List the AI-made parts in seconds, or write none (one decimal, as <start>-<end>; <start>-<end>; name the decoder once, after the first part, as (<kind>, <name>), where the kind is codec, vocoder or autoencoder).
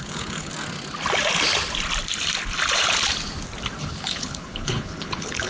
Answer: 0.0-0.5 (codec, HILCodec); 3.8-5.5